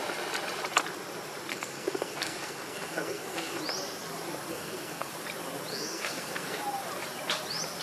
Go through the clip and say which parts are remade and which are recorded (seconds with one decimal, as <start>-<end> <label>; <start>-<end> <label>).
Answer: 0.0-1.5 recorded; 1.5-3.6 remade; 3.6-4.5 recorded; 4.5-5.1 remade; 5.1-5.7 recorded; 5.7-6.6 remade; 6.6-7.8 recorded